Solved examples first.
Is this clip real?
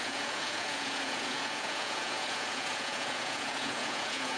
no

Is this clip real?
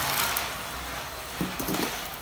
yes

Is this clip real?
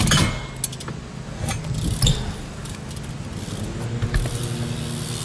yes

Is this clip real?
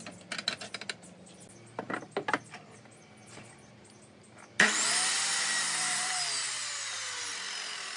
yes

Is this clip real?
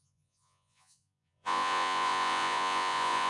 no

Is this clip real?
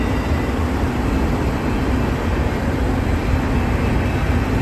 yes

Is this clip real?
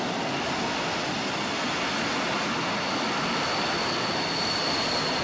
yes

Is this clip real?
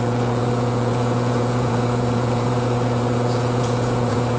no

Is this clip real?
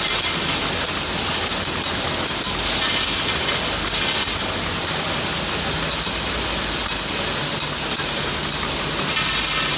yes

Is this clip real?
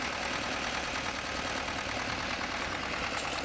yes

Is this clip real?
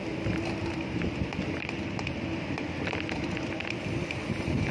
yes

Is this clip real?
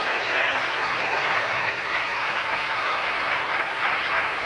no